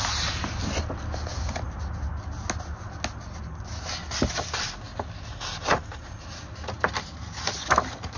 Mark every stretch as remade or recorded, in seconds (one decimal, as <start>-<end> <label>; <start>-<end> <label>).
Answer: 0.0-8.2 recorded